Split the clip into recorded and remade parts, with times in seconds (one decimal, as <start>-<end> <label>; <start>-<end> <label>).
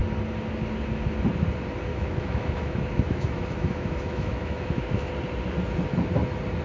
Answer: 0.0-1.9 recorded; 1.9-5.1 remade; 5.1-6.6 recorded